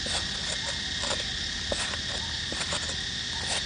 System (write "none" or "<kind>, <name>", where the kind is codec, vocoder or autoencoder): none